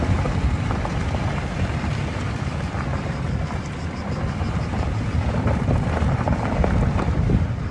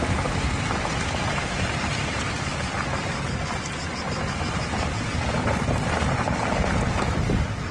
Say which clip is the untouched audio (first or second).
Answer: second